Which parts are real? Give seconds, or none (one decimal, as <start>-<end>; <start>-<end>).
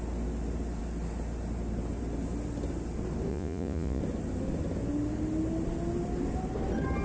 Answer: 0.0-3.3; 4.0-7.0